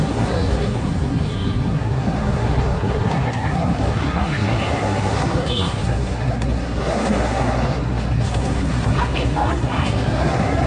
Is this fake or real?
fake